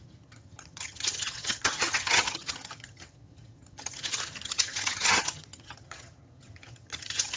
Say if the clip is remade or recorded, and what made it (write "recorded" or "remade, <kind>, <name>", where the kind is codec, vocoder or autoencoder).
remade, vocoder, HiFi-GAN